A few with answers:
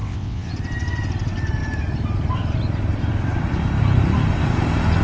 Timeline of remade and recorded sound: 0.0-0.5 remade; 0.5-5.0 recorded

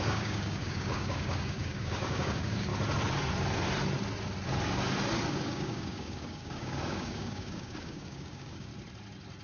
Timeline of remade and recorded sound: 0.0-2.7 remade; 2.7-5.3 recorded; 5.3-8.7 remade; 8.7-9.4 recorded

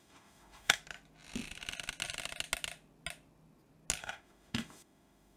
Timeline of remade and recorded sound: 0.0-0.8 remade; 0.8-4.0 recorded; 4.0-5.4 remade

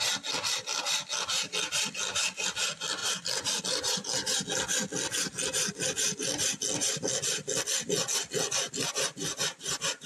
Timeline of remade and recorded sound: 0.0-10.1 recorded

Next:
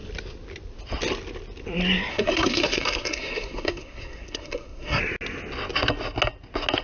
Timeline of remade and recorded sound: 0.0-2.1 recorded; 2.1-5.0 remade; 5.0-6.8 recorded

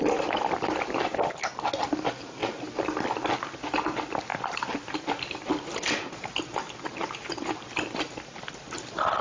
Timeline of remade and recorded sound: 0.0-9.2 recorded

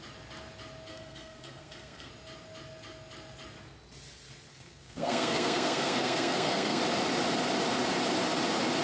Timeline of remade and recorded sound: 0.0-0.9 recorded; 0.9-2.1 remade; 2.1-4.5 recorded; 4.5-6.8 remade; 6.8-8.8 recorded